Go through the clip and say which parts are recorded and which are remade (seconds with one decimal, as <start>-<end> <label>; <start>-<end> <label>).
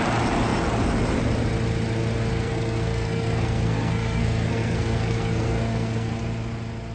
0.0-2.3 recorded; 2.3-6.2 remade; 6.2-6.9 recorded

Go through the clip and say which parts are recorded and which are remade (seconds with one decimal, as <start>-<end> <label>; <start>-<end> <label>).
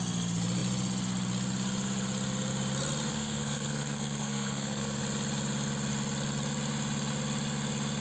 0.0-3.1 recorded; 3.1-5.0 remade; 5.0-8.0 recorded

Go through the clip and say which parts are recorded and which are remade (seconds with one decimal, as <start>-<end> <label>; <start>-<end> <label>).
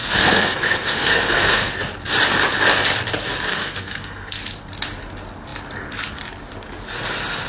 0.0-1.7 remade; 1.7-3.5 recorded; 3.5-4.4 remade; 4.4-7.5 recorded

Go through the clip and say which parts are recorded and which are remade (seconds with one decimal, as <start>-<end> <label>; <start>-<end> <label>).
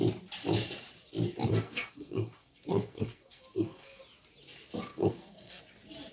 0.0-1.5 recorded; 1.5-4.0 remade; 4.0-4.9 recorded; 4.9-5.6 remade; 5.6-6.1 recorded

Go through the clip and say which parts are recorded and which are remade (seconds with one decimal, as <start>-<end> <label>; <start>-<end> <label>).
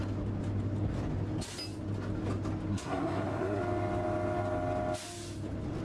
0.0-2.7 recorded; 2.7-3.6 remade; 3.6-5.8 recorded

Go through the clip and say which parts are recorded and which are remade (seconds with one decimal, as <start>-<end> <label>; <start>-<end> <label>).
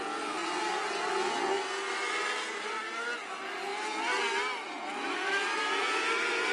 0.0-6.5 recorded